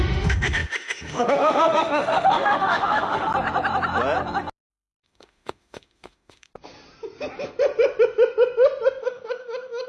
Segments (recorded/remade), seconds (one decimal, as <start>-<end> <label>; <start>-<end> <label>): 0.0-3.3 remade; 3.3-4.7 recorded; 4.7-6.5 remade; 6.5-9.0 recorded; 9.0-9.9 remade